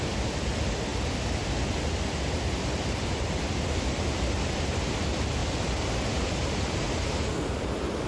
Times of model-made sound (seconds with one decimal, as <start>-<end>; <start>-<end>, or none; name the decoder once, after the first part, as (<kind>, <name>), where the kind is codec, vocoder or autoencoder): none